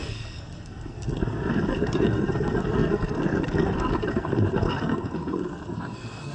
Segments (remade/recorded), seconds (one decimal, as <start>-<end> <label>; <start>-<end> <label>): 0.0-6.3 remade